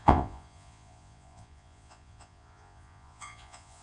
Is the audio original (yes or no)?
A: no